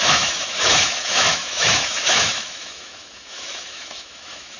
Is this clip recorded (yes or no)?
no